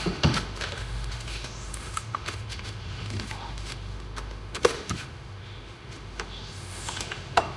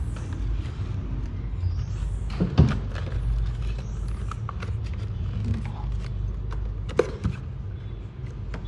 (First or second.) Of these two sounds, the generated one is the first